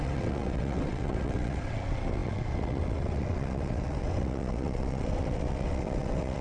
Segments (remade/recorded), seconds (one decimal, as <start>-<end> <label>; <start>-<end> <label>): 0.0-6.4 remade